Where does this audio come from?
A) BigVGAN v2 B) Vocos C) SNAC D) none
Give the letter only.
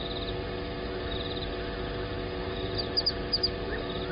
D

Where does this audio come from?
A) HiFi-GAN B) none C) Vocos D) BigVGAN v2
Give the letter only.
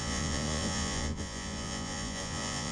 C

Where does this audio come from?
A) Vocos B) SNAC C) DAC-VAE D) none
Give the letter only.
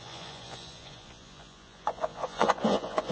A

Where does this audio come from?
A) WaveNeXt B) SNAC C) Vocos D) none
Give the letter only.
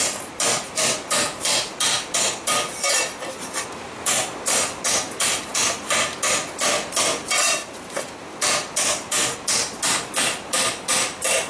D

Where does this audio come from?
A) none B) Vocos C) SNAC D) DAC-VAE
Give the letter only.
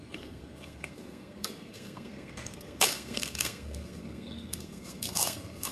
C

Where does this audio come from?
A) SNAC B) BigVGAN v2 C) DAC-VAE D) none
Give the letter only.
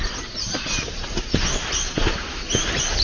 D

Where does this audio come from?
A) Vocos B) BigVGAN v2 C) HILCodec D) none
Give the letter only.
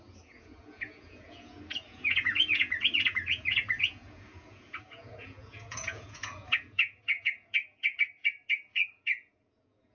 A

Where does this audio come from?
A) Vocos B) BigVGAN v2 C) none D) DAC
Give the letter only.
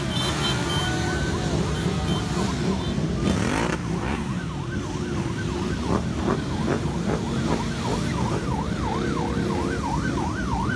C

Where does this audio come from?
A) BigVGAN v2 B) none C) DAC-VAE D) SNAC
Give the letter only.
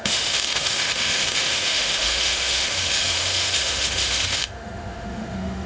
C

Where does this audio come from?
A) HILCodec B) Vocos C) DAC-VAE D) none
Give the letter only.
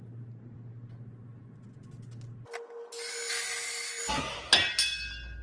D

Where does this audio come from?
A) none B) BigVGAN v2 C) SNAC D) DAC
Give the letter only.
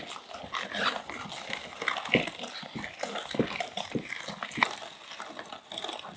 A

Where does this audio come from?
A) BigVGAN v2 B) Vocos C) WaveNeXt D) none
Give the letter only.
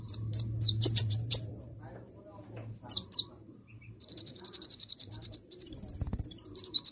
A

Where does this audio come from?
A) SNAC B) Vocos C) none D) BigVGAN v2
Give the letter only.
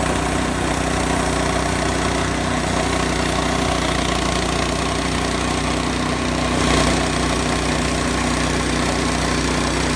C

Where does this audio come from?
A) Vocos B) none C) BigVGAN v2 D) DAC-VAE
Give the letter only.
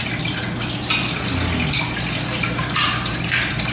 B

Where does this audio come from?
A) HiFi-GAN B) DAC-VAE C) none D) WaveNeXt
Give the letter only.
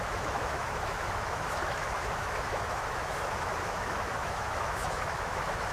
B